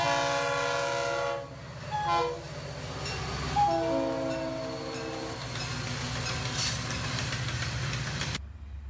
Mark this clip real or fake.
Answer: real